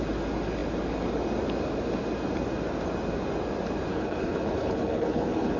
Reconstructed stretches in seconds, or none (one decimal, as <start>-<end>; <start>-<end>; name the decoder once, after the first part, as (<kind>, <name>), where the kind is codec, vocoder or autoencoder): 3.9-5.6 (codec, HILCodec)